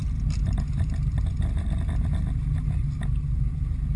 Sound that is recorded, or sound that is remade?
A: recorded